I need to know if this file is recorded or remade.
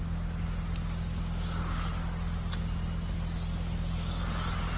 recorded